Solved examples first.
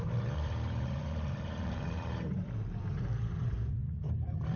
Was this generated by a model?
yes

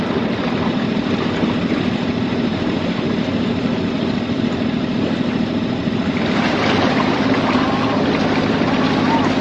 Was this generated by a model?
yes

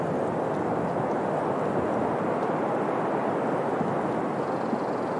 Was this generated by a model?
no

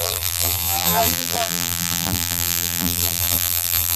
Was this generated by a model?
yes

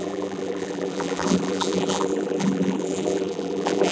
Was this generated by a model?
yes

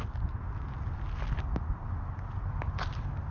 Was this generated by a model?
no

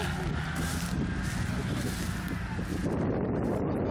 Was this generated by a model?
no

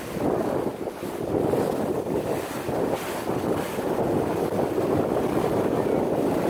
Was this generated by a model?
no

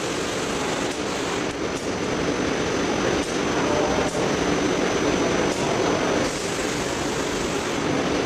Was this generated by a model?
no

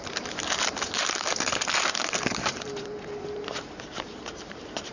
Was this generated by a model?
yes